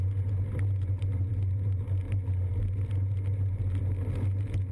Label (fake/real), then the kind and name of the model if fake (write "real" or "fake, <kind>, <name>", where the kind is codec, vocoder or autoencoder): real